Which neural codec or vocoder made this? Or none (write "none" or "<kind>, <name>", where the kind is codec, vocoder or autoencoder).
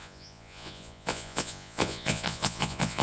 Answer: vocoder, Vocos